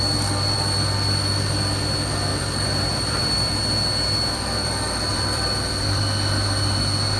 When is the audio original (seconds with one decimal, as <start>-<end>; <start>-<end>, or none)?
0.0-2.3; 3.5-5.1; 6.0-7.2